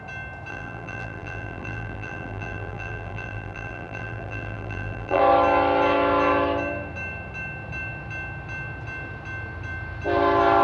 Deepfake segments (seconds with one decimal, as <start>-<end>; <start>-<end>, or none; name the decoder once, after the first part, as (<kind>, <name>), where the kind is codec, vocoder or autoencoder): 0.5-5.2 (vocoder, BigVGAN v2)